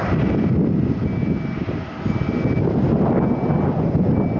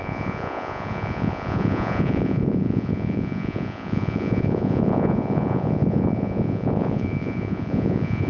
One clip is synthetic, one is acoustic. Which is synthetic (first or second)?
second